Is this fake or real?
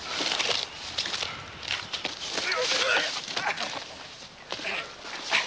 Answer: real